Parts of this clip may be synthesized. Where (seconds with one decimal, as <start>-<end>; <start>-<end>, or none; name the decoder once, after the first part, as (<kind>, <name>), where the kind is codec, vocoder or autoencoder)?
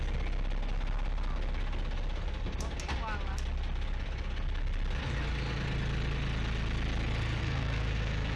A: 7.4-8.4 (codec, SNAC)